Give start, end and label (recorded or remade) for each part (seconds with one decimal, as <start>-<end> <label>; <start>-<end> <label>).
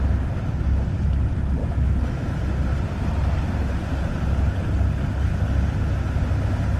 0.0-1.6 recorded; 1.6-2.4 remade; 2.4-6.8 recorded